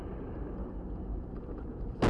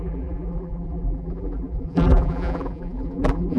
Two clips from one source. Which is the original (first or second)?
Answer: first